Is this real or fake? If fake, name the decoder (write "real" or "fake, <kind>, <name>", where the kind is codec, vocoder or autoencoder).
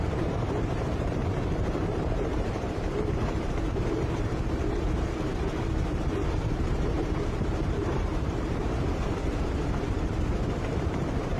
fake, vocoder, BigVGAN v2